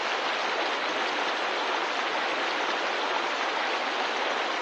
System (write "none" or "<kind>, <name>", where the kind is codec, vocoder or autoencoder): none